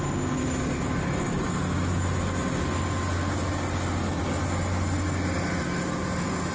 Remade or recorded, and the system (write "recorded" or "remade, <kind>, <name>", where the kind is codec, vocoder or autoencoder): recorded